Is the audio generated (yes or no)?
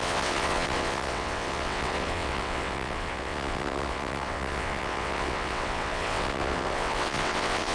yes